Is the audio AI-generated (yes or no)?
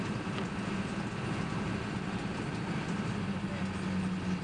no